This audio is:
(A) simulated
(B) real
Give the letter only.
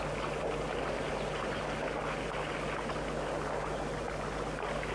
B